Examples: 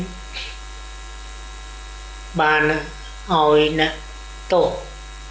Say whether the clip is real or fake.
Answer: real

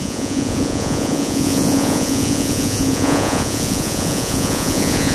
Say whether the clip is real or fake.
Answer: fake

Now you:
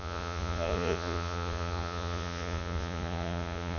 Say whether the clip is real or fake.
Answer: fake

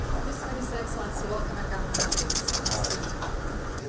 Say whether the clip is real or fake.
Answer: fake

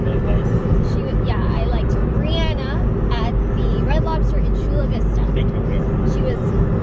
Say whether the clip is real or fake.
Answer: real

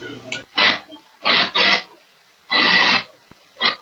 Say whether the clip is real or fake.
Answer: real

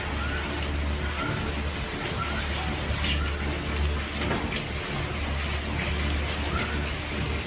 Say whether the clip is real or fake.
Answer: real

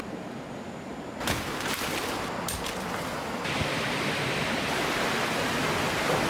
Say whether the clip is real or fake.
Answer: real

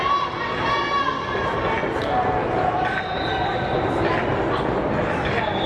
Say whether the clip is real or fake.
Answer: real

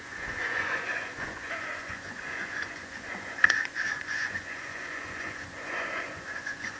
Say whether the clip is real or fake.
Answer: fake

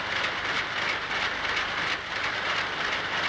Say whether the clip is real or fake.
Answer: real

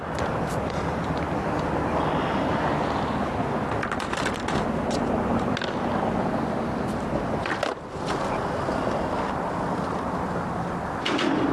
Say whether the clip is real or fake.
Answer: real